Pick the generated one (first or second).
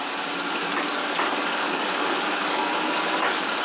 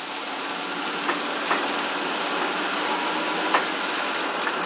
first